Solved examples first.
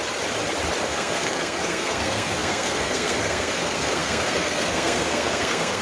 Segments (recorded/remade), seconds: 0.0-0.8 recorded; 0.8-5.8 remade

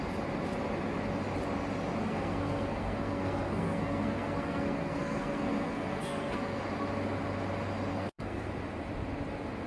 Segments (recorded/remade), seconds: 0.0-2.0 recorded; 2.0-6.6 remade; 6.6-7.9 recorded; 7.9-8.5 remade; 8.5-9.7 recorded

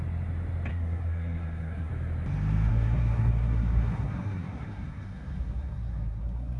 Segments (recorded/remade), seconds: 0.0-0.7 recorded; 0.7-1.9 remade; 1.9-2.7 recorded; 2.7-6.6 remade

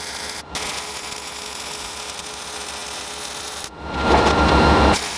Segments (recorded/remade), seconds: 0.0-5.2 recorded

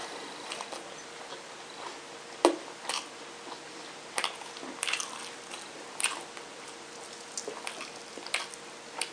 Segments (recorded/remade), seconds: 0.0-9.1 recorded